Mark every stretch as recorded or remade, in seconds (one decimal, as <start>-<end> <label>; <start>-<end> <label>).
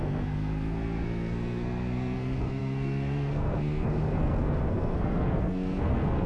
0.0-6.3 remade